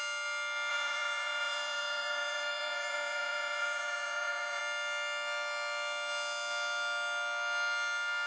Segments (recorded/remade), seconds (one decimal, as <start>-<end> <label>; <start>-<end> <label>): 0.0-0.7 recorded; 0.7-4.6 remade; 4.6-8.3 recorded